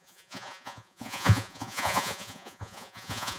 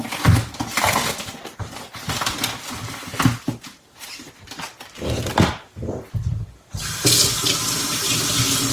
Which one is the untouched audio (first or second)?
second